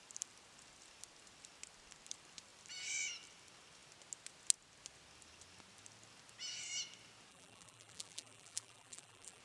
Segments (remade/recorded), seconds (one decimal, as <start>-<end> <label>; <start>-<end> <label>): 0.0-7.3 recorded; 7.3-9.4 remade